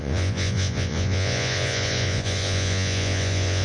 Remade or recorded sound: remade